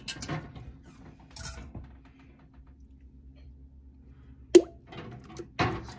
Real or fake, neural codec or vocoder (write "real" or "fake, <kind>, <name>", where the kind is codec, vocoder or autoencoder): real